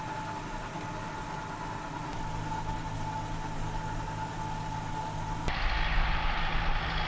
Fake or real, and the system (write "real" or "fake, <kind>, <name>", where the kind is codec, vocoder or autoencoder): real